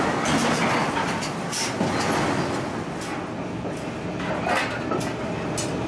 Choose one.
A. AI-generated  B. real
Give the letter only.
B